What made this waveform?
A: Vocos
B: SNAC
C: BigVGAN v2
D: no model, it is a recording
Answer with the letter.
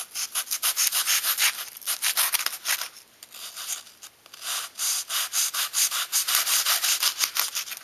D